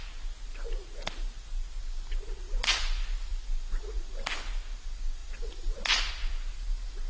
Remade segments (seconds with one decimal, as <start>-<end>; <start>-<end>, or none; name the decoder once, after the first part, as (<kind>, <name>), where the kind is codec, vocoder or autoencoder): none